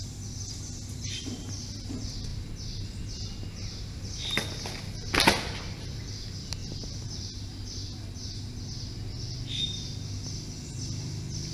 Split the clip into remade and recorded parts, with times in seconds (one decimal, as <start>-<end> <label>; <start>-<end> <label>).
0.0-6.6 recorded; 6.6-8.3 remade; 8.3-11.5 recorded